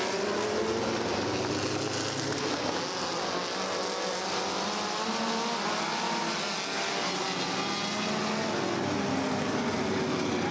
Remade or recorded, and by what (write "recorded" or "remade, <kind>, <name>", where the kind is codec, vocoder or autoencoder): recorded